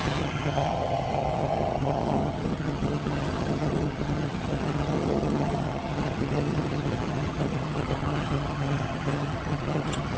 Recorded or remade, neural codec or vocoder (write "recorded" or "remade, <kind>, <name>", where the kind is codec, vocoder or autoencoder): remade, vocoder, HiFi-GAN